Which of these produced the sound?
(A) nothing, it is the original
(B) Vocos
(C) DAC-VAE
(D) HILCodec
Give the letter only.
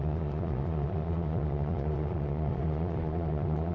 B